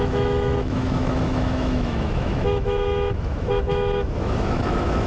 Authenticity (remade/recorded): remade